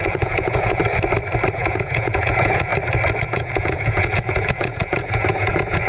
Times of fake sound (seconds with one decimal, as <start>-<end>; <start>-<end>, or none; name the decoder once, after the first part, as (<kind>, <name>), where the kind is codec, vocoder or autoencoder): 0.0-0.8 (vocoder, Vocos); 1.5-2.7; 3.2-5.9